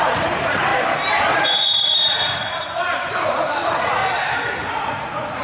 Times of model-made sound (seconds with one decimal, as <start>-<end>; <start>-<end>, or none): 0.0-0.7; 1.2-4.0; 4.7-5.4